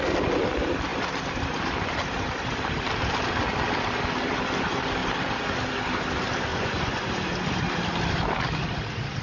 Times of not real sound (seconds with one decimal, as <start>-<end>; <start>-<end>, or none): 6.5-7.1